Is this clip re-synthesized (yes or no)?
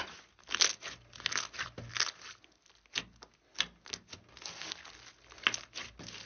no